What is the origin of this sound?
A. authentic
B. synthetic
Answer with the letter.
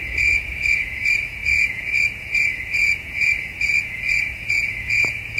B